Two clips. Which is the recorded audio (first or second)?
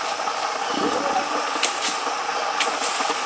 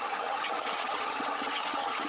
first